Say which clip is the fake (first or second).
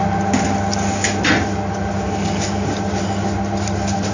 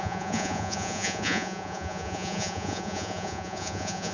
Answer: second